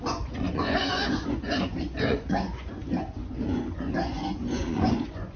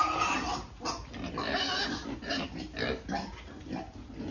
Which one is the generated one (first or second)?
first